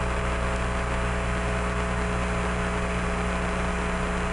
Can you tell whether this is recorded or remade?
recorded